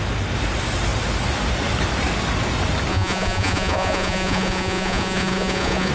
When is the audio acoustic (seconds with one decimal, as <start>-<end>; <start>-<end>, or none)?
0.0-2.9